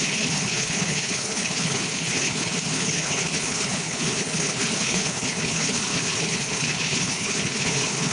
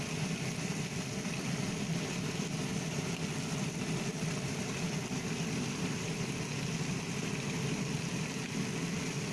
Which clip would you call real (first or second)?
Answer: second